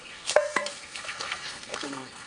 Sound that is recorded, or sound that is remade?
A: remade